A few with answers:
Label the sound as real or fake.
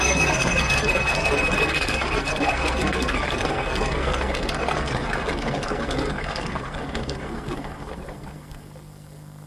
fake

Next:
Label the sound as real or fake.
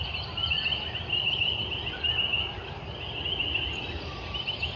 real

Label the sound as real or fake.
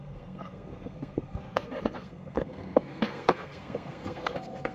fake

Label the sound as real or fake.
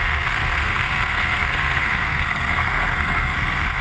fake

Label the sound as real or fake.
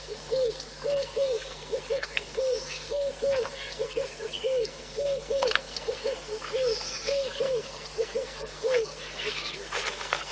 fake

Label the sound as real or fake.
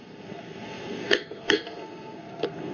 fake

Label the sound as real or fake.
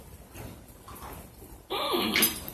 real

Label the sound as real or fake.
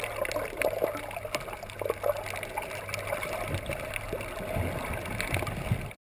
real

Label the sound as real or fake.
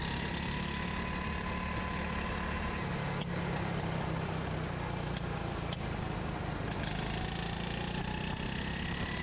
real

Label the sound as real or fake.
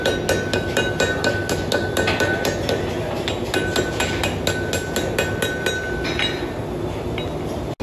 real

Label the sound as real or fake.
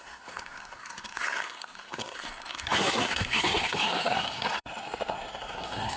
fake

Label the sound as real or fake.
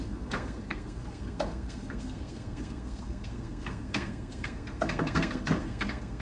fake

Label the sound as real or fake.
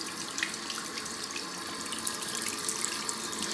real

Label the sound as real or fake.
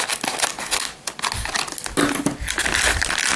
real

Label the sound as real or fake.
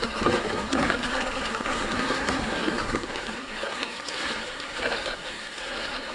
fake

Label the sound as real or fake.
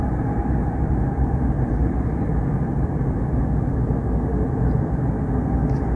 real